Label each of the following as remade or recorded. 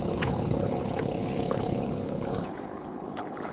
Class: remade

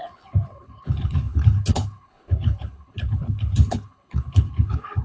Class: remade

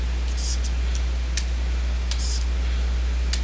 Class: recorded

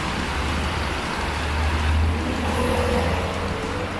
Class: recorded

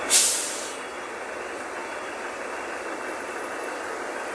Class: recorded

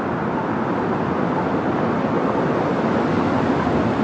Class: recorded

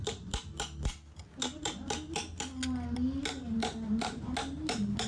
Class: recorded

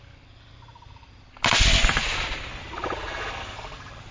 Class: recorded